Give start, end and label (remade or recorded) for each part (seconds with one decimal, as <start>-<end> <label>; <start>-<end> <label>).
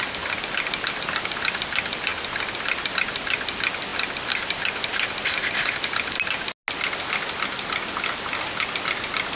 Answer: 0.0-3.9 recorded; 3.9-5.9 remade; 5.9-9.4 recorded